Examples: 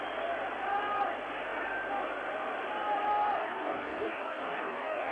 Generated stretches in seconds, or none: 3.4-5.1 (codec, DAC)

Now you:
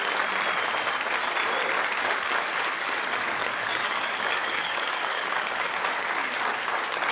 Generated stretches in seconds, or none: 2.0-3.0 (codec, DAC); 3.4-5.7; 6.2-7.1

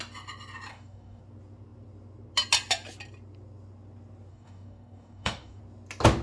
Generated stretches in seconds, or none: 0.7-1.2 (codec, DAC); 4.3-5.6

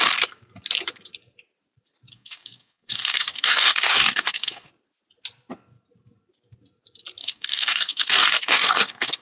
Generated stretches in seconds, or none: 2.1-4.7 (codec, DAC); 7.2-9.2

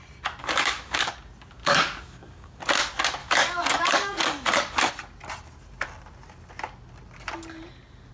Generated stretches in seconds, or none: 0.4-1.1 (codec, DAC); 1.6-2.6; 3.2-4.9